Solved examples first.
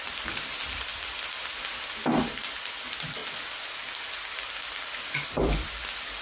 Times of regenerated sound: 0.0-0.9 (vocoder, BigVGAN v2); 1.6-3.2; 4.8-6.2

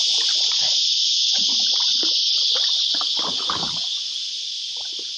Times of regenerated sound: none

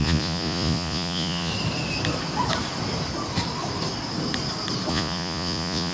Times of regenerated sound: 0.0-1.5 (vocoder, Vocos); 4.9-5.9

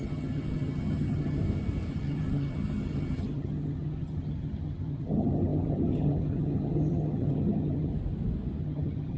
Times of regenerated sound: 0.0-1.4 (vocoder, HiFi-GAN); 1.9-7.9; 8.6-9.2

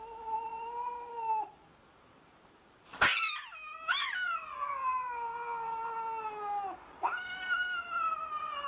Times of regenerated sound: none